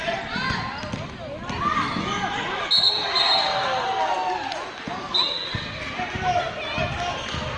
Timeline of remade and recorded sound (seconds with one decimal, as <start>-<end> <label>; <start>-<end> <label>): 0.0-7.6 recorded